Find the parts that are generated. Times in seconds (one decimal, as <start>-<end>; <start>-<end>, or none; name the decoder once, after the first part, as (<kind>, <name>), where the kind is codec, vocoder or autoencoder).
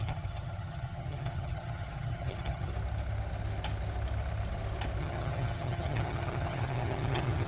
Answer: 0.0-2.7 (vocoder, HiFi-GAN); 5.0-7.5